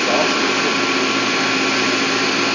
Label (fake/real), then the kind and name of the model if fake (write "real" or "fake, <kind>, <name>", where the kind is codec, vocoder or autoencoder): real